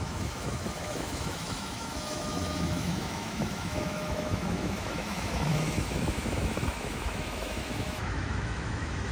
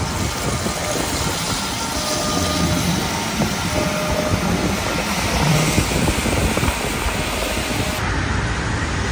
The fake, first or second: first